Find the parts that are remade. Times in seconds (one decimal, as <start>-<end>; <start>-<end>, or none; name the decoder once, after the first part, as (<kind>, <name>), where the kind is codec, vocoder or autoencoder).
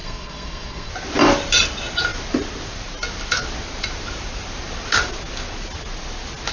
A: 0.0-0.9 (codec, SNAC)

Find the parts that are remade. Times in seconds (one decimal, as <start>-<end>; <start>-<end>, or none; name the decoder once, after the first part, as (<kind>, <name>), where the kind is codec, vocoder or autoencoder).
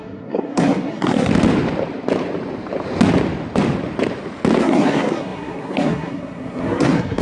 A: 0.0-1.3 (codec, SNAC); 4.6-7.2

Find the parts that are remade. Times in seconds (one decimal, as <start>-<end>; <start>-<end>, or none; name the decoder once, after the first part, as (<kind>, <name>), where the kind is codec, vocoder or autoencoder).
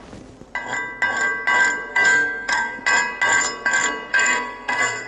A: 1.9-2.8 (codec, SNAC); 4.1-5.1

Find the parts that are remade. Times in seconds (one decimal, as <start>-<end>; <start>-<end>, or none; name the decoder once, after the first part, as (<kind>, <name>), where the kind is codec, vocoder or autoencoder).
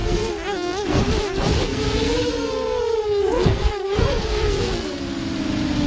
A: 0.0-1.0 (codec, SNAC); 1.5-5.0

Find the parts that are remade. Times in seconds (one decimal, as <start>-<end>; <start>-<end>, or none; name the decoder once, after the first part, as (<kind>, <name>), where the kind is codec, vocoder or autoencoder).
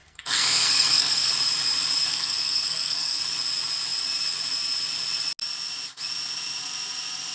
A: 0.0-1.3 (codec, SNAC); 2.1-3.2